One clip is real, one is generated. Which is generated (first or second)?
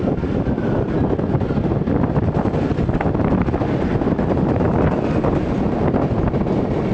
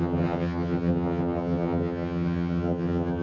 second